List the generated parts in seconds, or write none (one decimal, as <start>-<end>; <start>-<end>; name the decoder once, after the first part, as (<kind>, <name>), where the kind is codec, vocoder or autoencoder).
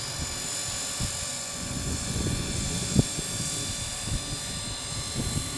1.3-2.9 (vocoder, Vocos)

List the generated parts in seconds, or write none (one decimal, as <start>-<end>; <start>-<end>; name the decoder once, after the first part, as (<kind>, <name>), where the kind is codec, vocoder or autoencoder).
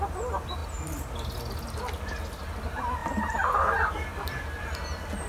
none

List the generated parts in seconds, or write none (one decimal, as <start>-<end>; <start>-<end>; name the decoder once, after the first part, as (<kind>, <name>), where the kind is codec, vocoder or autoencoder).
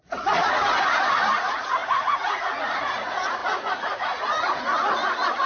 0.0-5.5 (vocoder, Vocos)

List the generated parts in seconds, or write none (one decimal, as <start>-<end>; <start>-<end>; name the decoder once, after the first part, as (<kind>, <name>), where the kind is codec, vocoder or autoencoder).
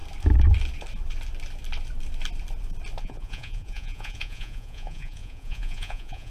3.0-6.3 (vocoder, Vocos)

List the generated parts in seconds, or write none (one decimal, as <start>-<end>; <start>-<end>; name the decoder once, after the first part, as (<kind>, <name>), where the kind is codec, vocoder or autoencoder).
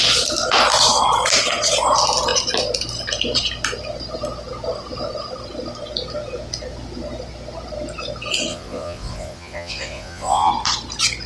8.5-10.5 (vocoder, Vocos)